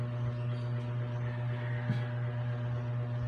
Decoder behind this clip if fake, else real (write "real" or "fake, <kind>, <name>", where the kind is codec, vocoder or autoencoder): real